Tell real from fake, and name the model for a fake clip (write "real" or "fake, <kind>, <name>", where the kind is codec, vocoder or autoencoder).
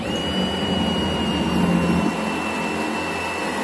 real